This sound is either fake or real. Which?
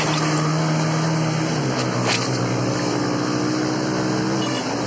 real